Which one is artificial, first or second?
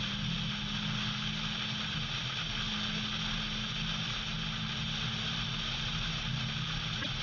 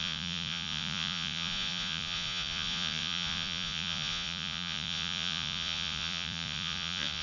second